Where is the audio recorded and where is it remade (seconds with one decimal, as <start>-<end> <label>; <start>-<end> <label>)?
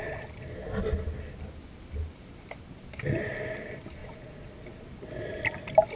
0.0-4.0 recorded; 4.0-4.9 remade; 4.9-6.0 recorded